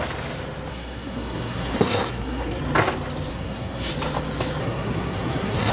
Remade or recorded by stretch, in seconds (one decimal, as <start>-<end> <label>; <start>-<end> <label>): 0.0-0.7 recorded; 0.7-2.6 remade; 2.6-3.3 recorded; 3.3-3.9 remade; 3.9-4.6 recorded; 4.6-5.7 remade

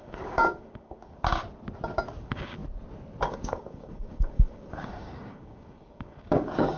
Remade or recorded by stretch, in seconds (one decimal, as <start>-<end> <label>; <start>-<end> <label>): 0.0-1.4 remade; 1.4-2.2 recorded; 2.2-2.6 remade; 2.6-3.2 recorded; 3.2-6.8 remade

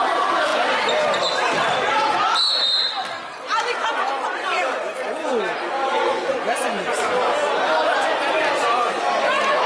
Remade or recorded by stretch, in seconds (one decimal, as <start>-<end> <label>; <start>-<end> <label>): 0.0-9.7 recorded

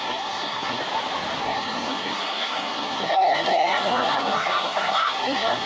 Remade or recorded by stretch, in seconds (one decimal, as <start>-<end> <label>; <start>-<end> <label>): 0.0-0.8 remade; 0.8-1.4 recorded; 1.4-5.7 remade

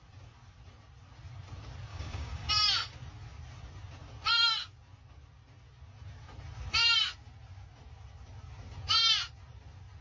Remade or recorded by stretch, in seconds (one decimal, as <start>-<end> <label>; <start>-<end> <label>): 0.0-1.9 recorded; 1.9-2.5 remade; 2.5-10.0 recorded

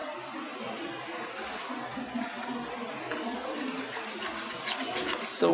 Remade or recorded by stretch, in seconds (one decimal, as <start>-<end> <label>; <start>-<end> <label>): 0.0-5.5 recorded